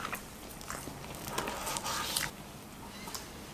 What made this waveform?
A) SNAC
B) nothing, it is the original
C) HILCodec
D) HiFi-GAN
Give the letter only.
B